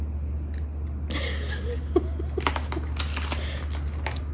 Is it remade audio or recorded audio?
recorded